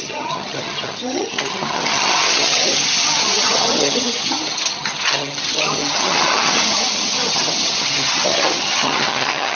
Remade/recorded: remade